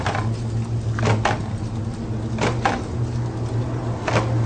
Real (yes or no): yes